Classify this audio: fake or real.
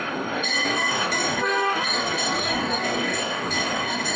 fake